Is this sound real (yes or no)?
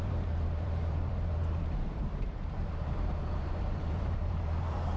no